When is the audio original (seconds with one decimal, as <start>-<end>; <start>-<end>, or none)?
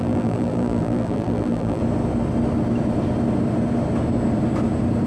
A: 1.8-5.1